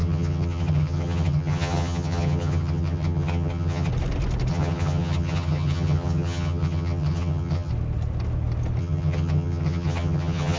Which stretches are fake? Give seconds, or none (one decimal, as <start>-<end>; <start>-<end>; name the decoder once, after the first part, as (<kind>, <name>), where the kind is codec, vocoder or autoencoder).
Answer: 0.0-3.9 (vocoder, HiFi-GAN); 4.5-7.7; 8.8-10.6